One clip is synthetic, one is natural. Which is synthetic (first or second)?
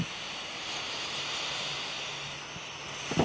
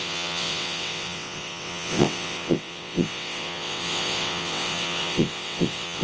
second